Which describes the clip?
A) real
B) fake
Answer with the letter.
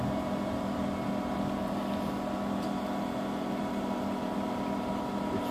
A